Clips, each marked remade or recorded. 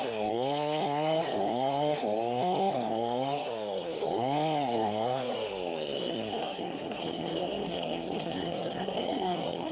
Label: remade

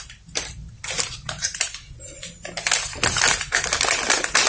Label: recorded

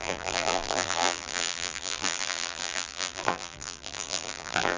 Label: remade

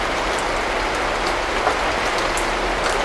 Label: recorded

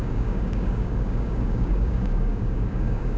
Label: remade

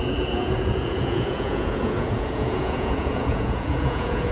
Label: remade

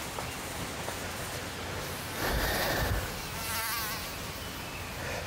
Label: recorded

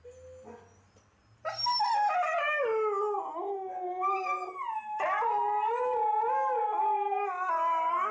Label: recorded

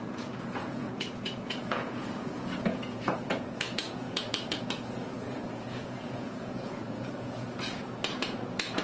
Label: remade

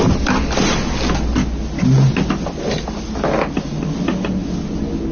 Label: recorded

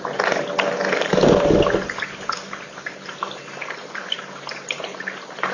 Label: recorded